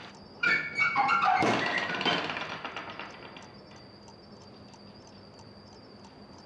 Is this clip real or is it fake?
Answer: real